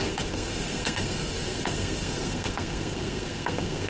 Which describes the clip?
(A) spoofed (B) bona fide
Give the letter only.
A